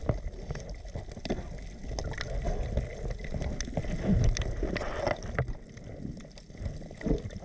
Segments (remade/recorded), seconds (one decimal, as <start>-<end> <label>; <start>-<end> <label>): 0.0-7.4 recorded